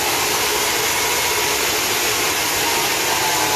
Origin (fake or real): real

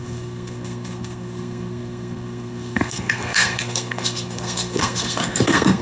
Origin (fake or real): fake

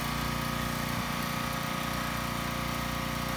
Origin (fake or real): real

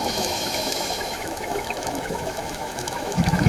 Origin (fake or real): fake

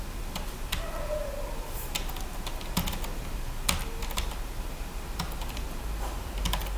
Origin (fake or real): real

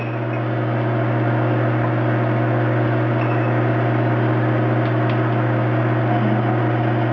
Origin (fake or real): real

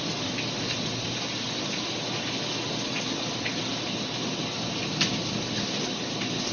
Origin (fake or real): real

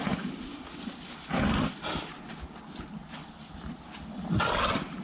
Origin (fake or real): real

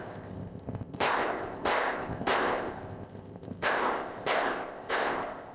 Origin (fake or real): fake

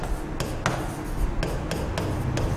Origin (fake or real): real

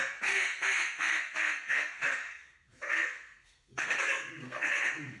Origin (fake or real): fake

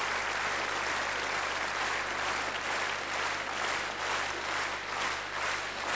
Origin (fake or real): real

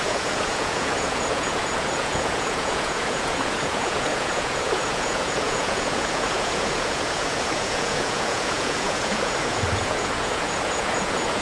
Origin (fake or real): fake